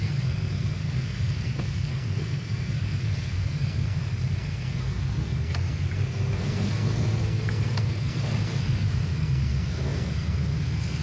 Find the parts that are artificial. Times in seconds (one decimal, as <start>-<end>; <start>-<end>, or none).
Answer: 0.0-11.0